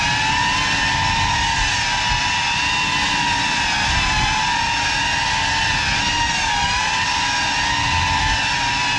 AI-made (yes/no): no